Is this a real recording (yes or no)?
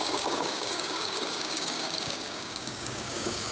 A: no